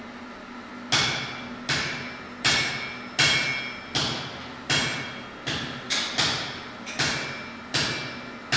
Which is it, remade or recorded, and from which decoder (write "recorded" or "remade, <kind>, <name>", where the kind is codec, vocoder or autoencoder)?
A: recorded